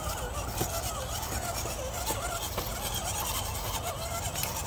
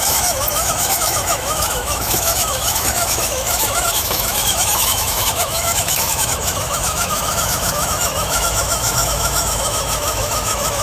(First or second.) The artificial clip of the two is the second